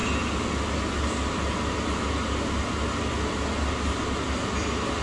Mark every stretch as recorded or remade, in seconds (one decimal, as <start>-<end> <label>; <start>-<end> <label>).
0.0-5.0 recorded